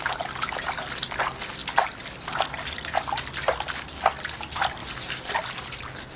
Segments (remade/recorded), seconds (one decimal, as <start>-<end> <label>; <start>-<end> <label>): 0.0-6.2 recorded